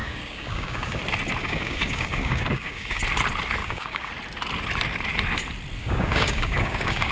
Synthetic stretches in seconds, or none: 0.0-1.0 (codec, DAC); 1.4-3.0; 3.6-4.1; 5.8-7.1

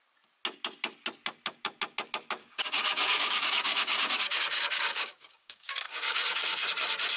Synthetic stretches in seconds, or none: 2.4-6.7 (codec, DAC)

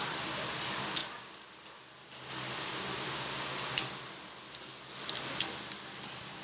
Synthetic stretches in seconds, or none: none

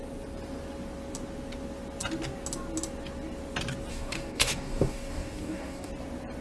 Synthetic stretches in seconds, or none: 3.9-5.9 (codec, DAC)

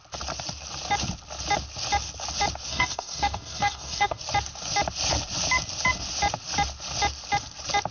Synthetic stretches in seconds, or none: 2.7-4.2 (codec, DAC)